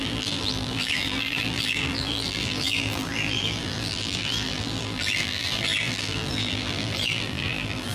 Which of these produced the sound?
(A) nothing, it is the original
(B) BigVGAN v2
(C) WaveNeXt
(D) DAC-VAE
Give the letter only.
B